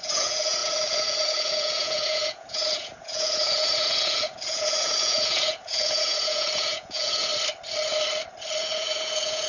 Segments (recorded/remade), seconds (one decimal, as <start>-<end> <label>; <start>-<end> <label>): 0.0-7.3 remade; 7.3-8.6 recorded; 8.6-9.5 remade